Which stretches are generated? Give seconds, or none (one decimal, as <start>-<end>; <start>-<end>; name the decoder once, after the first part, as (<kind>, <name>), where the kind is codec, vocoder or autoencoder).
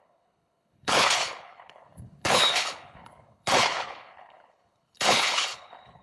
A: 0.0-6.0 (codec, HILCodec)